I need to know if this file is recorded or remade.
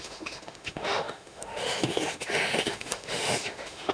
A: remade